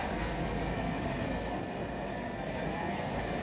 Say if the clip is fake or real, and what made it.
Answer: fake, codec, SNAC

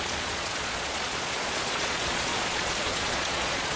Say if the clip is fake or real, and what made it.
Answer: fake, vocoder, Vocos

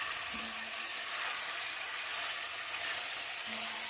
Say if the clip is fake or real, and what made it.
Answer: real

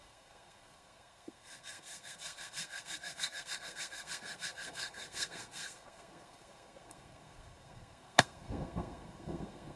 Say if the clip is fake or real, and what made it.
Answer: fake, codec, SNAC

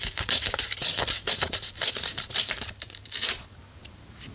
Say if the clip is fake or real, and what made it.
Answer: fake, vocoder, BigVGAN v2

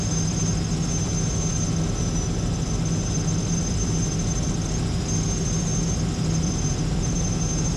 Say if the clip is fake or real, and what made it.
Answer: real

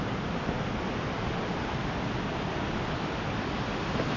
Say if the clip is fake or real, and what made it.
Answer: real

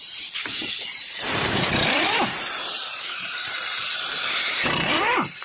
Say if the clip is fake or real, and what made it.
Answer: fake, vocoder, BigVGAN v2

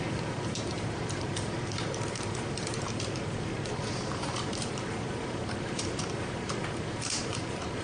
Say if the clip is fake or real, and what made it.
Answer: fake, vocoder, BigVGAN v2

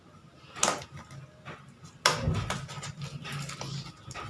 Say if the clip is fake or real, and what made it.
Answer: real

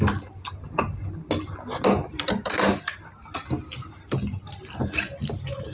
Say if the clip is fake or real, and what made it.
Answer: real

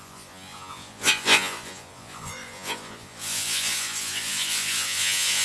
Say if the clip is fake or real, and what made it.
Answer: fake, vocoder, Vocos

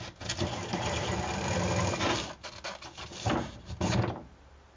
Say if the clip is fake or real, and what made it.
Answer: real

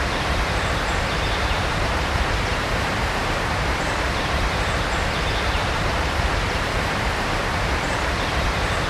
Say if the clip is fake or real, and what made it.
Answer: fake, vocoder, BigVGAN v2